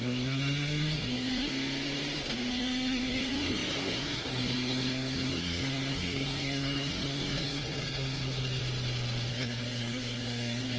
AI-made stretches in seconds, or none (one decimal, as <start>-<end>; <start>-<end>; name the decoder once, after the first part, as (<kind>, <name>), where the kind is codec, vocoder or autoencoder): 0.0-1.5 (codec, SNAC); 2.5-8.6; 9.3-10.8